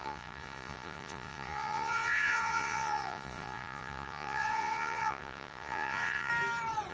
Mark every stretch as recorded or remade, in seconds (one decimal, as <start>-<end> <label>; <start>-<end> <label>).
0.0-6.3 remade; 6.3-6.9 recorded